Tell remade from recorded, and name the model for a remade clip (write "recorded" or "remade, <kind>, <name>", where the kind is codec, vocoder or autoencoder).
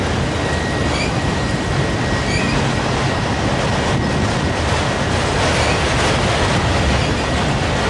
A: recorded